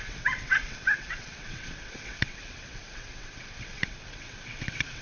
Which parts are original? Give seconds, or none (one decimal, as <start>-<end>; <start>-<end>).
none